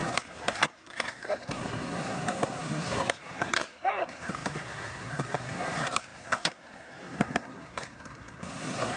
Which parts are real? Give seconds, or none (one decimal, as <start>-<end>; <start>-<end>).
none